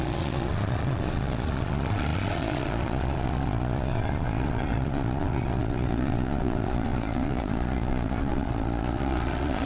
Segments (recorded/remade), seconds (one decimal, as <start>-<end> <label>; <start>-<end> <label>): 0.0-9.7 remade

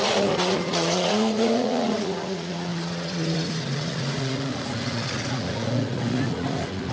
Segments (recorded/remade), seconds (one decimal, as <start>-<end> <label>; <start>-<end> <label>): 0.0-6.9 remade

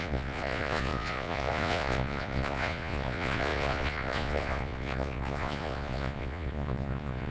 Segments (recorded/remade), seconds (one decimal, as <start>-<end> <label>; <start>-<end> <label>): 0.0-7.3 remade

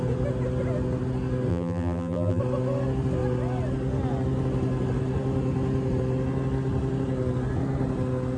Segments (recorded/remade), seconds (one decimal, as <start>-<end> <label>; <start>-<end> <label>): 0.0-1.5 recorded; 1.5-2.4 remade; 2.4-8.4 recorded

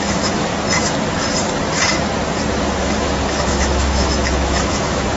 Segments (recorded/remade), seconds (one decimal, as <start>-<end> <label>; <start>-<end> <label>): 0.0-0.5 remade; 0.5-2.8 recorded; 2.8-5.2 remade

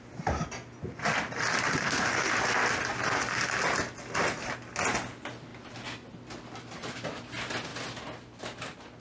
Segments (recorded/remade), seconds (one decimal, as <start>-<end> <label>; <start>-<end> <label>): 0.0-1.8 recorded; 1.8-2.3 remade; 2.3-9.0 recorded

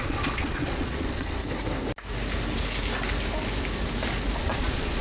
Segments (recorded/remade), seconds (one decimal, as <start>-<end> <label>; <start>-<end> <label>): 0.0-1.4 remade; 1.4-4.4 recorded; 4.4-5.0 remade